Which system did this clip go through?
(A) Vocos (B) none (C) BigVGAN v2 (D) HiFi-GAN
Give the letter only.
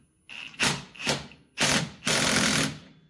B